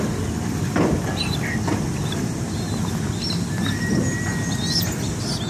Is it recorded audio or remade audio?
recorded